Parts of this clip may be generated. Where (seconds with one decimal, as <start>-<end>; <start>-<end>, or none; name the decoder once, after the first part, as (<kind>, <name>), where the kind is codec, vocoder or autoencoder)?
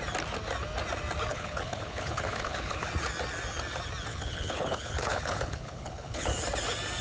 1.3-2.9 (codec, HILCodec); 4.1-6.3